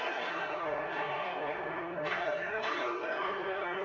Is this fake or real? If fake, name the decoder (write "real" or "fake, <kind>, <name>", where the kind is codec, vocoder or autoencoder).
fake, codec, SNAC